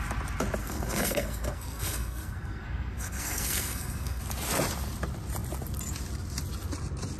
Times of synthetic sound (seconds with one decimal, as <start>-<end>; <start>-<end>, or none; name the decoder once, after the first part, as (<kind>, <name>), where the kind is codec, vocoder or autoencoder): 0.6-4.2 (codec, SNAC)

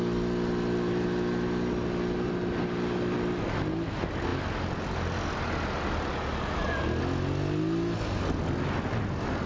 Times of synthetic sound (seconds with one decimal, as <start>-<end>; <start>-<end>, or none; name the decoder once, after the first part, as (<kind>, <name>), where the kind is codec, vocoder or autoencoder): none